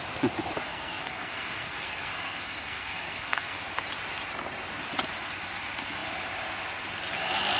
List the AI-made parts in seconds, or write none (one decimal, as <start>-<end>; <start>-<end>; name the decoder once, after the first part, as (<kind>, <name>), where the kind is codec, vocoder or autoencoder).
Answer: 0.7-3.6 (codec, SNAC)